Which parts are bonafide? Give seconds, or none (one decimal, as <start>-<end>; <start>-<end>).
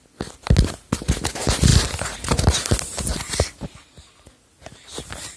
0.0-5.4